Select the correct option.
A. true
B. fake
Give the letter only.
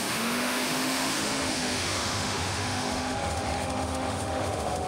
B